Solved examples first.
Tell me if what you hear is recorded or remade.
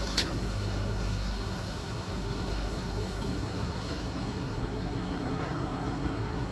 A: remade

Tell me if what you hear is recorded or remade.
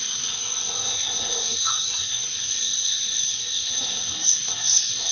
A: remade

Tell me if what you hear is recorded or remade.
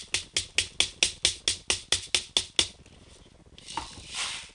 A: recorded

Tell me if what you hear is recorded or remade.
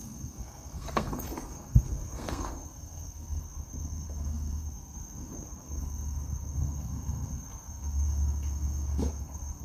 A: remade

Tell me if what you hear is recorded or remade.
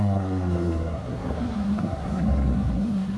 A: remade